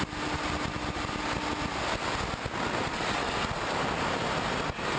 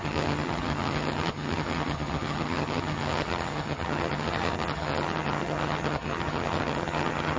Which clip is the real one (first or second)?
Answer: first